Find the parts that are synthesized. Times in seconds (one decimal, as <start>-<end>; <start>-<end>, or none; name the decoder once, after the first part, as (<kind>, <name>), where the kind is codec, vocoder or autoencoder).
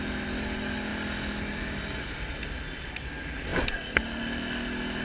none